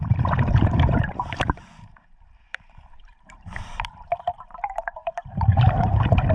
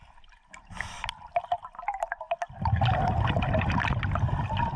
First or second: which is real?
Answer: second